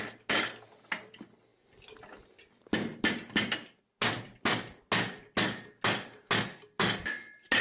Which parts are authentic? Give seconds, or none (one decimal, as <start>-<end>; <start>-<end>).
0.0-7.6